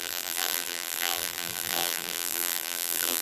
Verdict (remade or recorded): remade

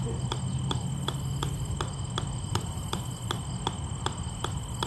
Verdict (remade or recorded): recorded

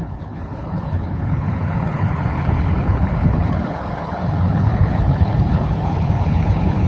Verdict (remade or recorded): remade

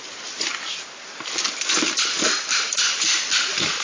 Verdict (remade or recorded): recorded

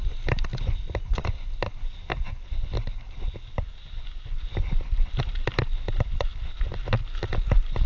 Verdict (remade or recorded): recorded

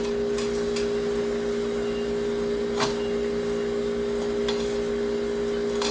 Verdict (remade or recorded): recorded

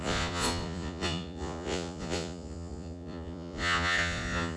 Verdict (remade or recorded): remade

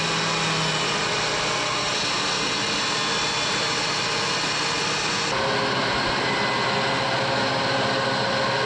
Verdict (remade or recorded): recorded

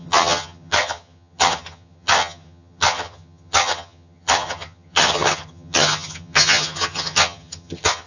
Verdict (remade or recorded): remade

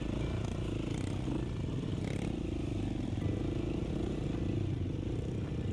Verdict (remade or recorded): recorded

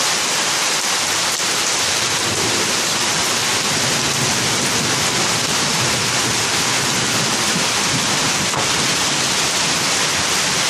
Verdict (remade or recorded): recorded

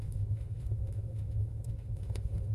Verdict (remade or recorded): remade